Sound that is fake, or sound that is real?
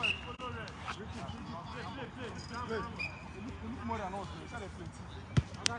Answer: real